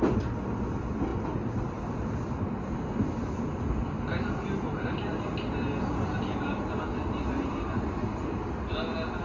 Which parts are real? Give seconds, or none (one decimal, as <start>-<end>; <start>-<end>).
0.0-9.2

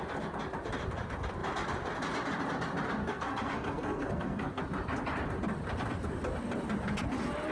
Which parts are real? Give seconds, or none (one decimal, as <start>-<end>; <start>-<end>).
0.0-3.0; 4.6-7.5

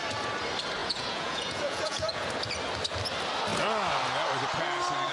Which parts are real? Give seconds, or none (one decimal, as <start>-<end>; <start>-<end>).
0.0-0.8; 2.3-5.1

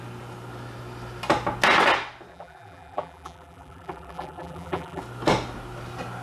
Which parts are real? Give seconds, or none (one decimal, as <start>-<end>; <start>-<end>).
0.0-2.3; 5.0-6.2

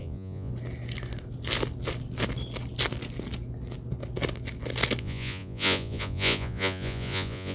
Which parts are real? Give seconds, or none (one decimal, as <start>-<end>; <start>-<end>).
0.5-5.0

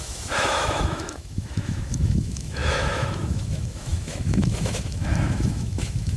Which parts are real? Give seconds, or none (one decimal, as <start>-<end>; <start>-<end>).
none

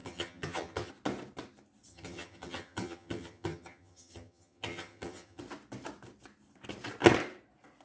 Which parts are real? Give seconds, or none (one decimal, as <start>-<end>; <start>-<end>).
0.9-1.9; 5.4-7.8